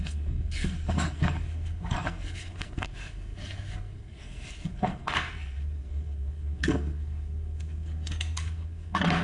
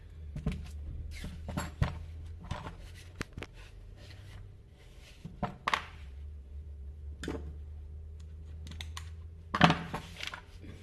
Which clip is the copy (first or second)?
first